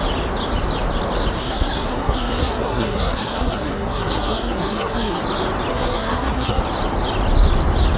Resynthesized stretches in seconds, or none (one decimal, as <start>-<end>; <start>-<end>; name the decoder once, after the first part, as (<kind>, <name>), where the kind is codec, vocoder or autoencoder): 1.4-5.2 (codec, SNAC); 5.7-6.6